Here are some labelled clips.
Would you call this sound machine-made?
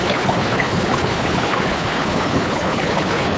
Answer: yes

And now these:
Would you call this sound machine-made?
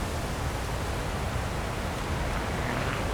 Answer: no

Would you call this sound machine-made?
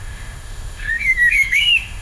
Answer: yes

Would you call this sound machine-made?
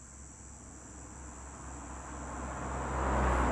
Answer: no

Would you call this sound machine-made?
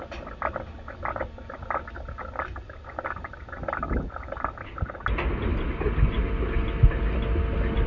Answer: no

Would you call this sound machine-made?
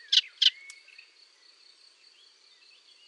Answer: no